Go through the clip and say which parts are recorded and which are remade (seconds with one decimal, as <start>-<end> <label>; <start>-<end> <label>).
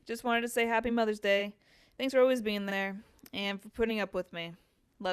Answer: 0.0-1.4 recorded; 1.4-2.1 remade; 2.1-2.7 recorded; 2.7-3.9 remade; 3.9-5.1 recorded